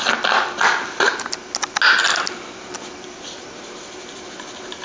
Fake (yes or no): no